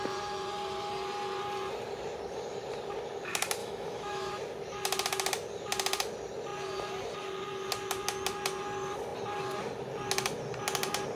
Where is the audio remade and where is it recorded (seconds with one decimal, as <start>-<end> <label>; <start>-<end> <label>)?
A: 0.0-3.6 recorded; 3.6-4.3 remade; 4.3-11.2 recorded